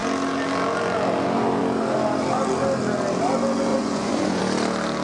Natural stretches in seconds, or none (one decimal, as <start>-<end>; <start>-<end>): 0.0-3.7; 4.4-5.0